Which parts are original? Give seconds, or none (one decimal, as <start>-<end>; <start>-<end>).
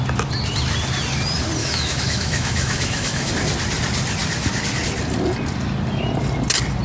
0.0-1.6; 3.3-6.8